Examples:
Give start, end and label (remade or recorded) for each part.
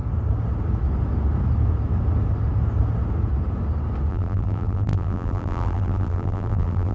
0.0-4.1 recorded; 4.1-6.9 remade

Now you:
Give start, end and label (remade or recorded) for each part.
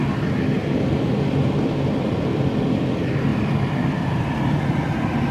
0.0-0.6 recorded; 0.6-2.5 remade; 2.5-3.3 recorded; 3.3-4.6 remade; 4.6-5.3 recorded